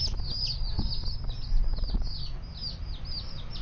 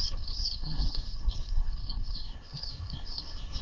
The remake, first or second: second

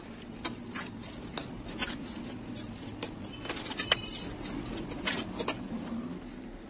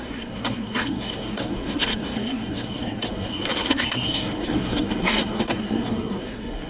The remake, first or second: second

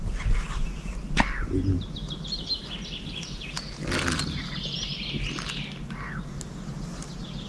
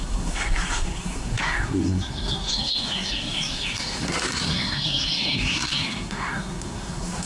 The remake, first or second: second